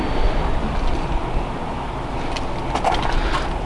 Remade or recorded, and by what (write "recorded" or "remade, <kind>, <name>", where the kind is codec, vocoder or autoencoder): recorded